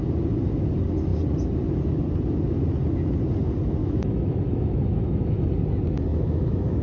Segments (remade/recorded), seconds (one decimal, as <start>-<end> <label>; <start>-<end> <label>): 0.0-3.8 recorded; 3.8-5.5 remade; 5.5-6.1 recorded; 6.1-6.8 remade